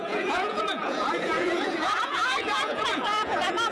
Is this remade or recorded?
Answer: remade